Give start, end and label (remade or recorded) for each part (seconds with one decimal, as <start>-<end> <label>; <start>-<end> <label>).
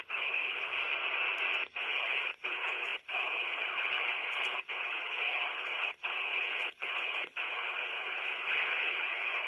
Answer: 0.0-0.7 remade; 0.7-1.8 recorded; 1.8-9.5 remade